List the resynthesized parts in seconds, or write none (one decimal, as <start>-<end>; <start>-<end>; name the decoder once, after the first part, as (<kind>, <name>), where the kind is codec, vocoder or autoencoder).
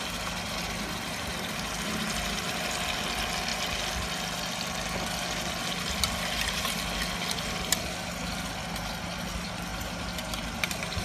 none